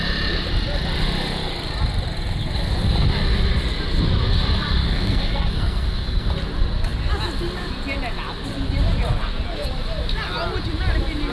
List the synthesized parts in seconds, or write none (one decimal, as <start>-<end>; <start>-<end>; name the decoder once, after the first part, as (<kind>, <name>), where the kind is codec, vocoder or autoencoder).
4.8-6.3 (codec, SNAC)